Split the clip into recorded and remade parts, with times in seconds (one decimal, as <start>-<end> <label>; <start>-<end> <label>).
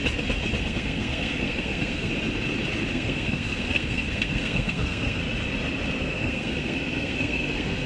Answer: 0.0-0.6 recorded; 0.6-2.1 remade; 2.1-2.9 recorded; 2.9-5.2 remade; 5.2-6.0 recorded; 6.0-7.9 remade